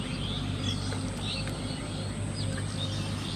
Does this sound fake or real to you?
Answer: real